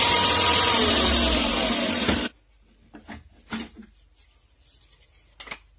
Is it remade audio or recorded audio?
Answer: recorded